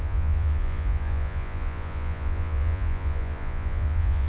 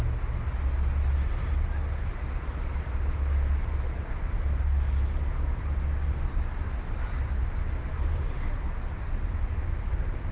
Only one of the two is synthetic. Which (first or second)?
first